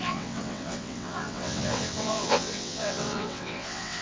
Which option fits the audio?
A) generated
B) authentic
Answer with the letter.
A